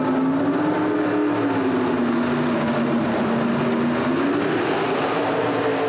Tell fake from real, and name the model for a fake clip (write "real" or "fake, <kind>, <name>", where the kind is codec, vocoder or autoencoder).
real